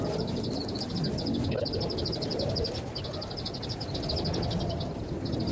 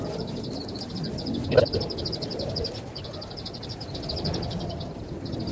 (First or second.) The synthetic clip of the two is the second